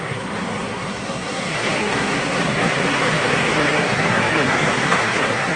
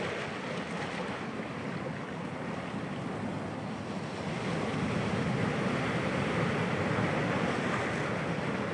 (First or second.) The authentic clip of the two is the second